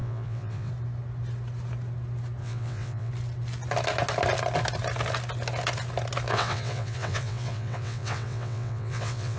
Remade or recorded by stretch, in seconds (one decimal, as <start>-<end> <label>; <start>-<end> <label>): 0.0-0.7 remade; 0.7-2.4 recorded; 2.4-3.1 remade; 3.1-6.3 recorded; 6.3-9.4 remade